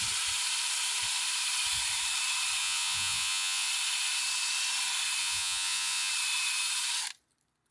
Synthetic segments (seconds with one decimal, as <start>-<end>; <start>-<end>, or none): 2.6-3.7; 5.2-6.1